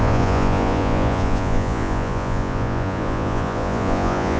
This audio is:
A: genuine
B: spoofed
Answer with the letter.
B